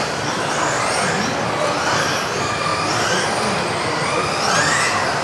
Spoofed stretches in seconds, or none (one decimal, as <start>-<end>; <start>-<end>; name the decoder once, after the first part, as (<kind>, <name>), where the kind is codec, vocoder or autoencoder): none